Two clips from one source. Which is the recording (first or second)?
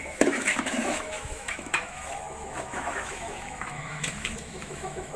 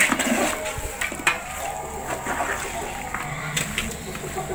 second